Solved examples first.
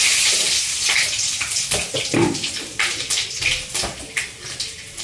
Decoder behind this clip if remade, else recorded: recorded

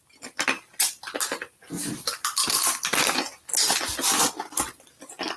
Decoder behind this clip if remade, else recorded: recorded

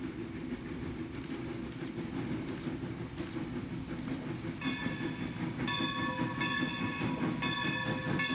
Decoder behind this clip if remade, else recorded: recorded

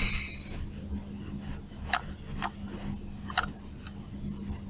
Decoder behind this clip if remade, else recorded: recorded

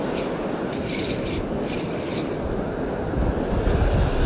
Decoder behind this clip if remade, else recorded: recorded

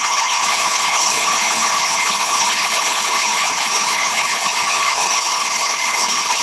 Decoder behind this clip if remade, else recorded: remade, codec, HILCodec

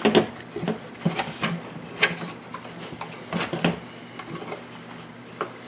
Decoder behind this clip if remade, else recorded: recorded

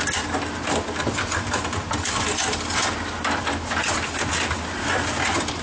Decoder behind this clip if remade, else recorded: recorded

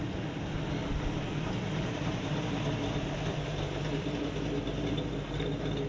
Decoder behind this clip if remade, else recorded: recorded